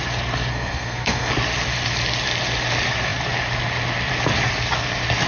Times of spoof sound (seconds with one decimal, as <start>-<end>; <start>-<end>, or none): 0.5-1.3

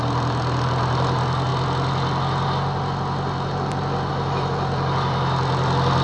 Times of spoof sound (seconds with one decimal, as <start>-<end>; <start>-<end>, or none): none

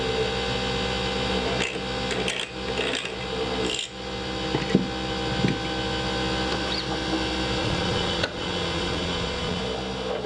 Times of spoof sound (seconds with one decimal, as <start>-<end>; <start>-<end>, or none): 7.6-9.6

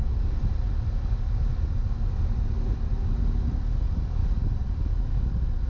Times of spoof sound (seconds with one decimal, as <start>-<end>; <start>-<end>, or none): none

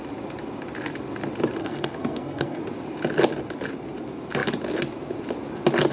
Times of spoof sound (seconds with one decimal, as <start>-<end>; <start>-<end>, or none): 1.6-2.6

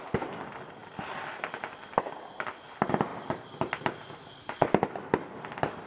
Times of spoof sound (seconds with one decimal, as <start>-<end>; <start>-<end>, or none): none

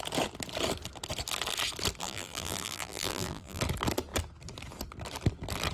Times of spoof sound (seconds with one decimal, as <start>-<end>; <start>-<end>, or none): 2.0-3.6

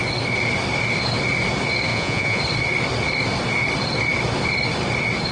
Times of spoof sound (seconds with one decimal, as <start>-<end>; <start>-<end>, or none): 1.9-2.4